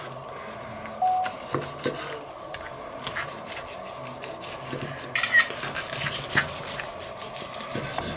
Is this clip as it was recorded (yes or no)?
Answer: yes